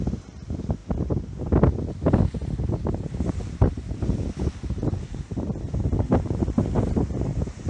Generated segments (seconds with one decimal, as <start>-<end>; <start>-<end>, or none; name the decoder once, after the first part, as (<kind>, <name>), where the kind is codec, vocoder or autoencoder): 0.0-0.8 (vocoder, BigVGAN v2); 3.7-7.7